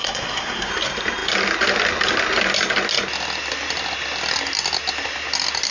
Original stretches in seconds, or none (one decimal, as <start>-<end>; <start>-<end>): 0.7-5.7